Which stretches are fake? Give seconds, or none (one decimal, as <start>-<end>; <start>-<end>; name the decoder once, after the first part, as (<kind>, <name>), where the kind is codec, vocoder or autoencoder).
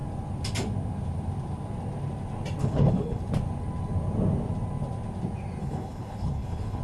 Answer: 2.6-3.2 (codec, HILCodec); 5.6-6.8